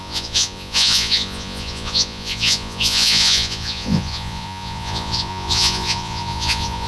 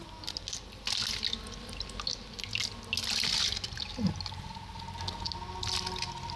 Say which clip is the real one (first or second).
second